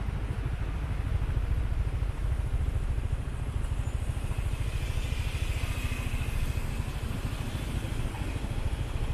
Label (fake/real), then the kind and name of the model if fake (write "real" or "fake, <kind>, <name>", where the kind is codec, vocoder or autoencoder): real